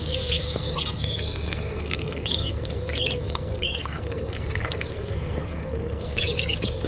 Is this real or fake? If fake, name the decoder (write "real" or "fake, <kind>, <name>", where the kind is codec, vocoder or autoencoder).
fake, codec, SNAC